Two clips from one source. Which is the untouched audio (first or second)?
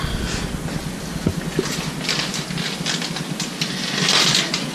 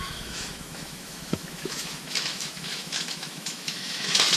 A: first